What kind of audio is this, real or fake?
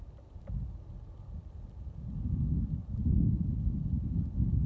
real